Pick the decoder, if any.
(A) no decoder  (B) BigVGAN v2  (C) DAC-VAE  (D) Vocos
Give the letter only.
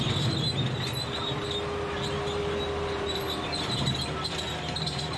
A